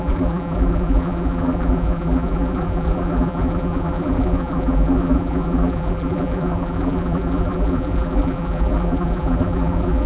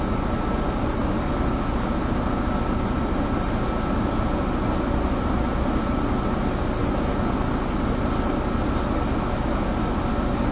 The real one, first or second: second